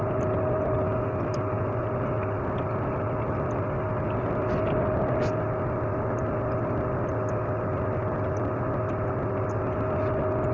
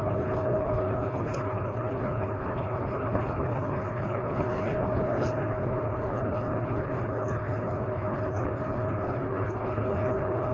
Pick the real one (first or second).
first